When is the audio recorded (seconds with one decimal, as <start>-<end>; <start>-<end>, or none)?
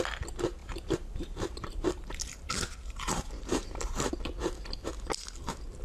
0.0-0.6; 4.1-5.8